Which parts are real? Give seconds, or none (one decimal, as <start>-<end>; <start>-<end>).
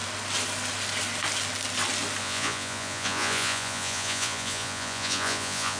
0.0-2.2